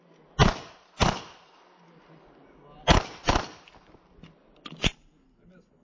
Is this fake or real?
real